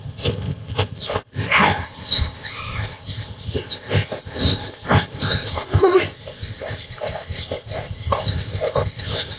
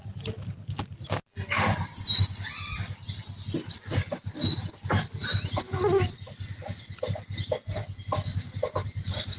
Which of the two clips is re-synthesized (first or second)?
first